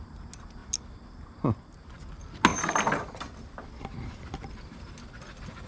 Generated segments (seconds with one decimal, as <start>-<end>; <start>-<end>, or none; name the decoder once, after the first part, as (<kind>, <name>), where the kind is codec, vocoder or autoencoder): none